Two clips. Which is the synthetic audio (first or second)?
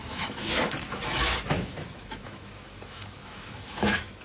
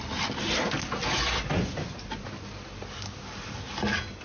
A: first